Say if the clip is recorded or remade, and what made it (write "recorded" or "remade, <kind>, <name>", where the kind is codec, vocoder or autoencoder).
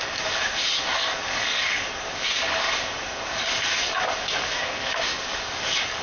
remade, codec, DAC